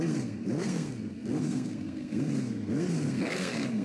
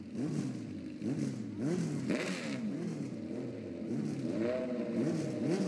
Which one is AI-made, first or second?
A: first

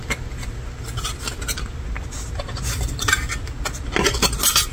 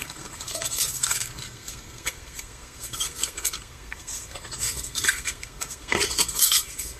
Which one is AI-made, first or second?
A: second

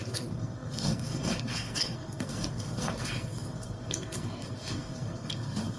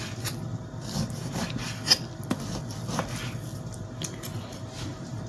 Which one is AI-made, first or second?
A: first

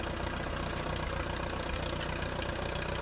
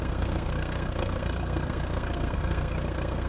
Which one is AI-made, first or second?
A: second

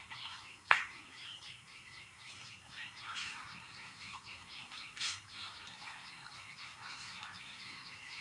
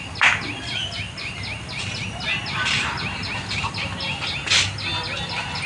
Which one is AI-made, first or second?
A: first